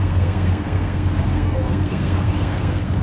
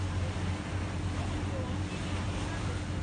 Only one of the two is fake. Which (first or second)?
first